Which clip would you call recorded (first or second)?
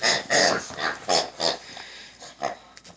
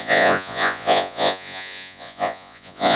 first